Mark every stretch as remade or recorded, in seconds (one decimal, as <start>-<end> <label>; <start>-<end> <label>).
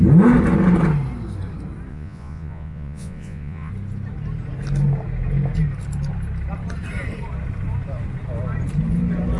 0.0-1.9 recorded; 1.9-3.7 remade; 3.7-9.4 recorded